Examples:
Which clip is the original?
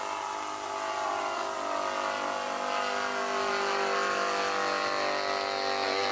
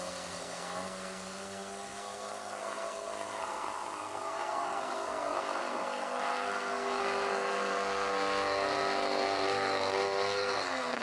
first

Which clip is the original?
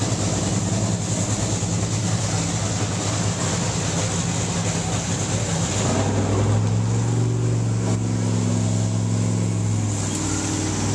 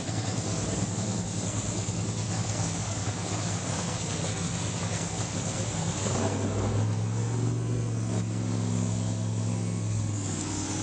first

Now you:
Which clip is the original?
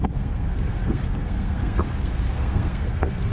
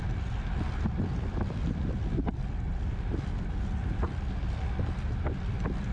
second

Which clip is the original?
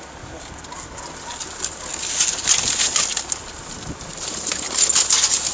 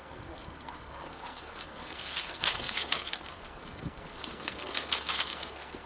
first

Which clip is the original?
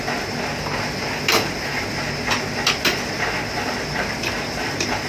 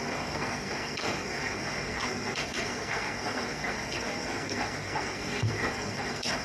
first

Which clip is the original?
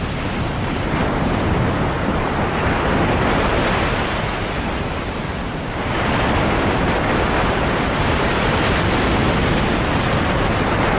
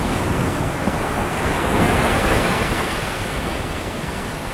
first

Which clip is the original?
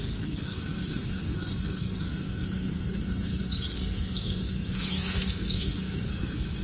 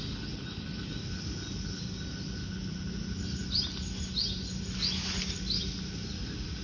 second